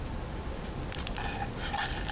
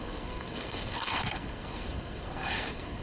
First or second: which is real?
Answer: first